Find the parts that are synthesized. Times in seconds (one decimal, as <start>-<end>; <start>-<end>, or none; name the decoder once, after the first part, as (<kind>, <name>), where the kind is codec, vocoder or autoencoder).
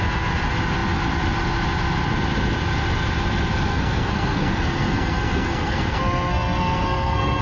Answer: 3.7-7.4 (codec, SNAC)